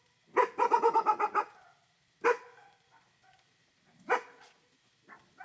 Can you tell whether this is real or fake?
real